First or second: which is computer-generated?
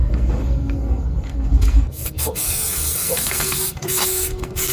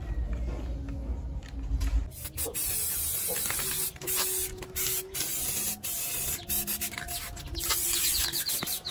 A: first